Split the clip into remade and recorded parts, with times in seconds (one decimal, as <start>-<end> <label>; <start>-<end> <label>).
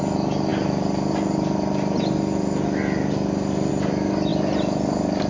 0.0-5.3 recorded